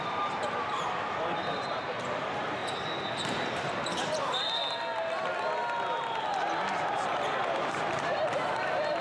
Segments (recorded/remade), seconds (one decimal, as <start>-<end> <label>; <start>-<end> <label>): 0.0-2.6 remade; 2.6-3.5 recorded; 3.5-4.6 remade; 4.6-7.5 recorded; 7.5-9.0 remade